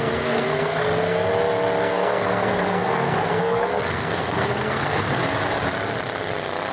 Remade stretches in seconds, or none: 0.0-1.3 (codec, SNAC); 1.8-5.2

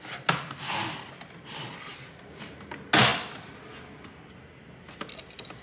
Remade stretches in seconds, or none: none

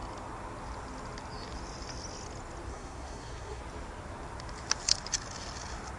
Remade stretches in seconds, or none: 2.7-3.6 (codec, SNAC)

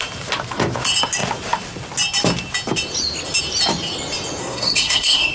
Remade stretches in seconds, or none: 4.4-5.3 (codec, SNAC)

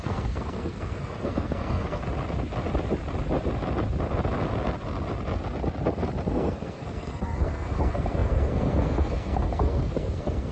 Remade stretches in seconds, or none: 0.0-2.0 (codec, SNAC); 6.3-10.5

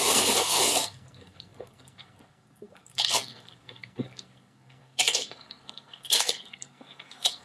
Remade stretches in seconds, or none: 0.0-7.4 (codec, SNAC)

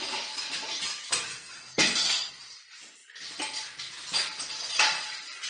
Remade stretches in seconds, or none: 1.3-2.3 (codec, SNAC)

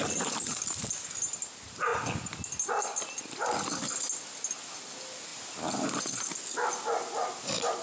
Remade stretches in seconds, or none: none